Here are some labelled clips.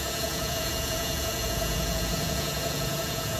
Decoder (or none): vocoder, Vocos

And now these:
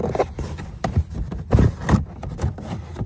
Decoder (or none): none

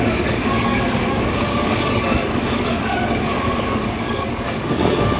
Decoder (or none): codec, DAC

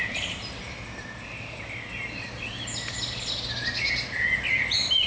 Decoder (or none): none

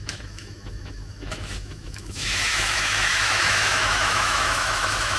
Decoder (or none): autoencoder, DAC-VAE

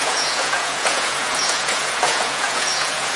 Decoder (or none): vocoder, Vocos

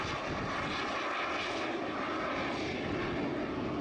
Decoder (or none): none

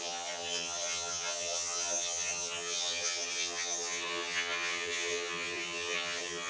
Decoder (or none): vocoder, HiFi-GAN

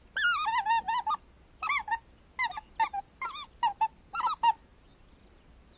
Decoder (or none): none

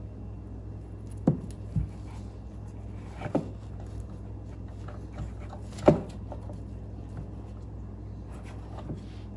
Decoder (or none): none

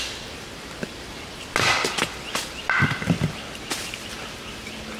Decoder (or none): none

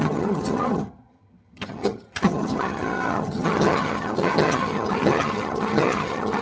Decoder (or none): vocoder, HiFi-GAN